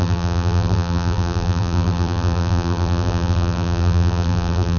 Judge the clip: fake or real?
fake